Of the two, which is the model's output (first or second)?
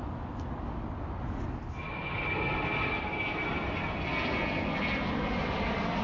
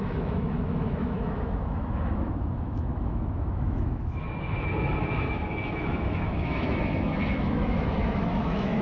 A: second